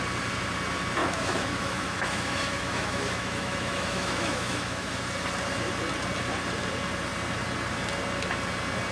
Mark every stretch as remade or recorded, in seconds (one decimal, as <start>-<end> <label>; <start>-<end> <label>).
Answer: 0.0-1.0 recorded; 1.0-5.0 remade; 5.0-8.9 recorded